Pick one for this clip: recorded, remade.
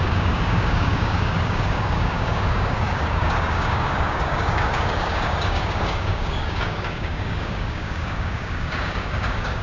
remade